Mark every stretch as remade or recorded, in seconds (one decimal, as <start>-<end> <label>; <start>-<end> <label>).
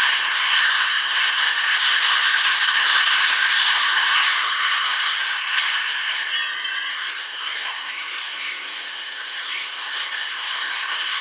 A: 0.0-6.3 remade; 6.3-6.9 recorded; 6.9-11.2 remade